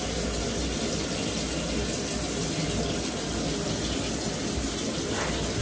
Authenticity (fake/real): real